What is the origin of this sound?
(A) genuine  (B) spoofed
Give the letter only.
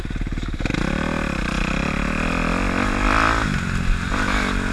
A